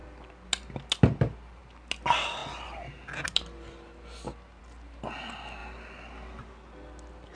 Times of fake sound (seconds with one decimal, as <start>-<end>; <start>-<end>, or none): none

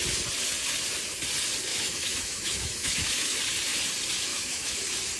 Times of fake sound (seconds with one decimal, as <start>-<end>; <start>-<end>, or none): 1.7-3.4; 4.3-4.8

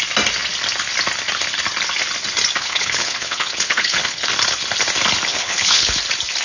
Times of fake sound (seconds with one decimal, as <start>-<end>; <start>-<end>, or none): 2.6-4.3; 5.3-6.0

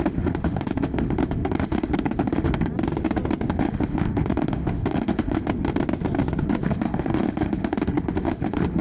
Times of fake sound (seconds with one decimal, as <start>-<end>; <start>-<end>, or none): 0.0-2.7; 3.5-5.5; 6.4-8.8

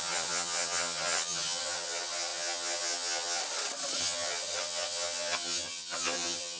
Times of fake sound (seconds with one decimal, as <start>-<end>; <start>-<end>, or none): 0.0-3.4; 4.0-6.6

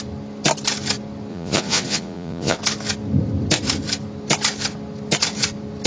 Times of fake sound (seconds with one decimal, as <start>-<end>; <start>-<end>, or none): 1.3-2.6

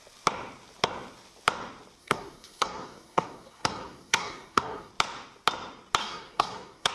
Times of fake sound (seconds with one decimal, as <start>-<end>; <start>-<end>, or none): 2.0-4.9; 6.0-6.9

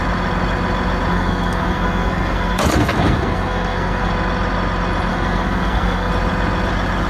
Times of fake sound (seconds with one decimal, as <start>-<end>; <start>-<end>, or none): 1.1-4.1; 5.1-6.1